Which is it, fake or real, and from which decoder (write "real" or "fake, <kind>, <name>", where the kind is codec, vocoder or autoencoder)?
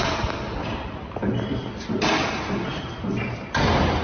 real